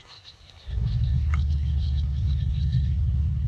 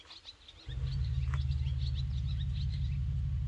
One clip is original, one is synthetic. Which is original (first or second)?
second